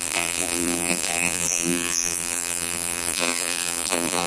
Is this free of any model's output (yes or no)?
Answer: no